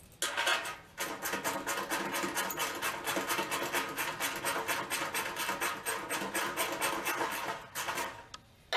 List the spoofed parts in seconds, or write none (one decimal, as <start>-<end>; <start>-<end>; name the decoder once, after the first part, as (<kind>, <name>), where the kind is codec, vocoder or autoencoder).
none